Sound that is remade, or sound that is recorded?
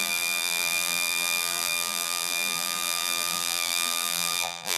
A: remade